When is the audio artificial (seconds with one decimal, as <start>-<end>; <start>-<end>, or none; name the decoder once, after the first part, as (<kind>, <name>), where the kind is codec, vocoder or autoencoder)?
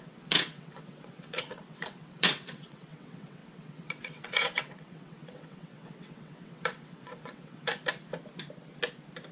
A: 0.0-7.7 (vocoder, WaveNeXt)